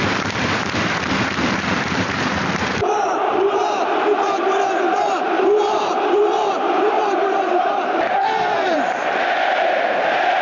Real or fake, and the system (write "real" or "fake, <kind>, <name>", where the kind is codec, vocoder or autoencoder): fake, vocoder, BigVGAN v2